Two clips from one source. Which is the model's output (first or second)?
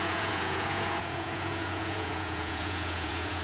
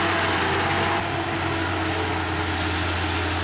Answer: first